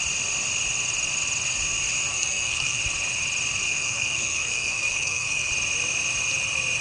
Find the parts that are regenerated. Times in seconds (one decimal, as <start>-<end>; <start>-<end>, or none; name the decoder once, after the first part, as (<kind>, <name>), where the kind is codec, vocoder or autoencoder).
2.1-2.8 (codec, SNAC); 3.6-5.5